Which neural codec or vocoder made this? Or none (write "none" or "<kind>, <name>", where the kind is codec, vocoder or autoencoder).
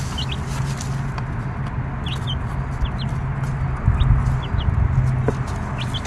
none